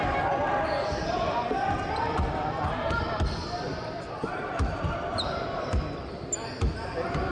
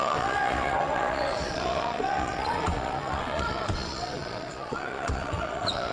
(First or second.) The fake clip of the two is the second